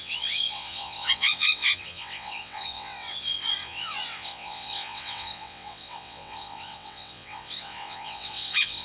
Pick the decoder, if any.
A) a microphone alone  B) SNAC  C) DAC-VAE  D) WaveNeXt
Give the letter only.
D